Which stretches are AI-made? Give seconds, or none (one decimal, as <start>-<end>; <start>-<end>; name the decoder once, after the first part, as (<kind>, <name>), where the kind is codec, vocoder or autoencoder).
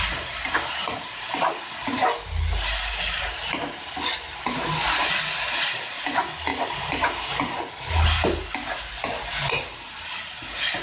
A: none